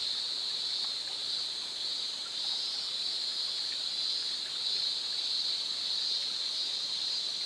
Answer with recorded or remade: recorded